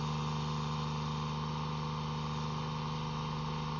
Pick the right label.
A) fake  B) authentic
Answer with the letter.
B